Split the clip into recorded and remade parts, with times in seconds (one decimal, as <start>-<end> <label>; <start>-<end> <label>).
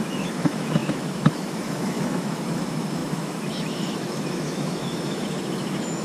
0.0-6.0 remade